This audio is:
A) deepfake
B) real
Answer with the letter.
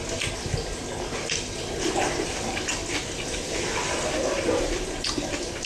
B